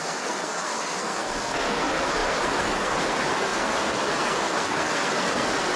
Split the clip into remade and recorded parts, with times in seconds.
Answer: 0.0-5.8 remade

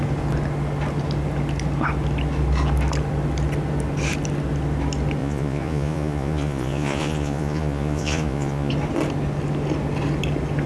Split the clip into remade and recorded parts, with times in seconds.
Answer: 0.0-5.2 recorded; 5.2-8.7 remade; 8.7-10.7 recorded

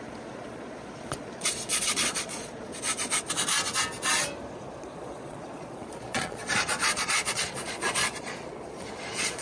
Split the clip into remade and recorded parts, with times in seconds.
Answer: 0.0-2.7 remade; 2.7-4.8 recorded; 4.8-9.4 remade

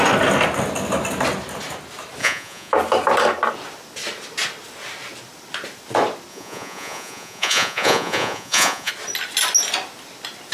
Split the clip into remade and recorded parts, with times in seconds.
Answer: 0.0-2.2 recorded; 2.2-2.7 remade; 2.7-6.3 recorded; 6.3-8.9 remade; 8.9-10.5 recorded

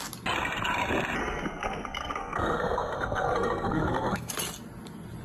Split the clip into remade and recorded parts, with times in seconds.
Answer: 0.0-1.2 recorded; 1.2-4.3 remade; 4.3-5.2 recorded